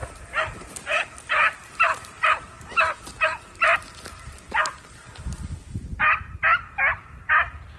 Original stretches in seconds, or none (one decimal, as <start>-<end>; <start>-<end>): 0.0-7.8